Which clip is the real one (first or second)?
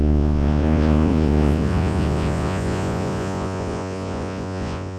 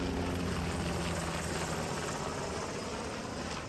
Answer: second